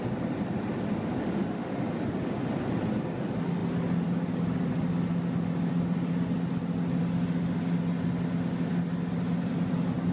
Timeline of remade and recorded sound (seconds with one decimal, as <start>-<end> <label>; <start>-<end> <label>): 0.0-1.2 recorded; 1.2-1.9 remade; 1.9-10.1 recorded